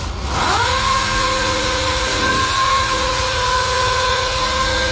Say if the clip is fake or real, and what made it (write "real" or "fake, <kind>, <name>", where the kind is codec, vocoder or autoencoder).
fake, vocoder, Vocos